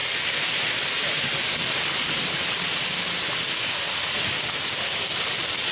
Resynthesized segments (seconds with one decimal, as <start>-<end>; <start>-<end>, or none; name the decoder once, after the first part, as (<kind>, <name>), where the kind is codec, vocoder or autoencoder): none